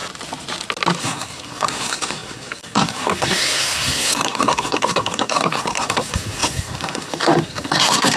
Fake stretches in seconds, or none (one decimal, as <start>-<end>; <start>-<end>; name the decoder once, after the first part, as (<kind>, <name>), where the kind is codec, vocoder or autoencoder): 1.0-8.2 (codec, SNAC)